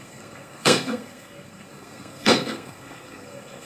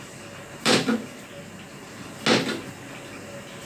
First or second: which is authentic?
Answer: second